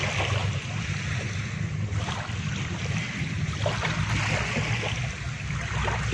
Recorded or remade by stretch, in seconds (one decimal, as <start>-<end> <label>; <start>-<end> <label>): 0.0-0.4 recorded; 0.4-4.1 remade; 4.1-6.1 recorded